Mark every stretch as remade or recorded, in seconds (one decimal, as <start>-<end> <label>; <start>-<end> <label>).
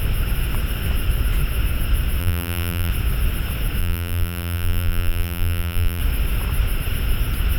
0.0-2.2 recorded; 2.2-2.9 remade; 2.9-3.8 recorded; 3.8-6.0 remade; 6.0-7.6 recorded